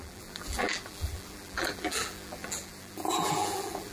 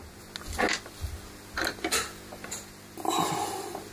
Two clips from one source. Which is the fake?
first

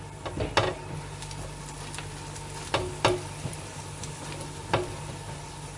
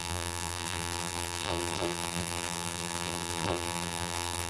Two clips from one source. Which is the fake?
second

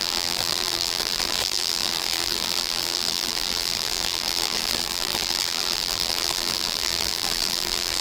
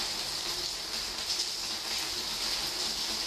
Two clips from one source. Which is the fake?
first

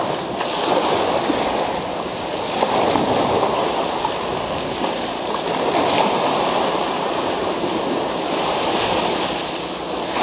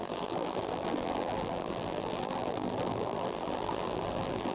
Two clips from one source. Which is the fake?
second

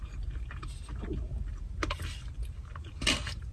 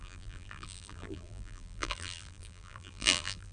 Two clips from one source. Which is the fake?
second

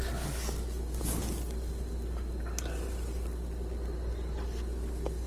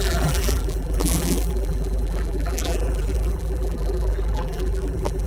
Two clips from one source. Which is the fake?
second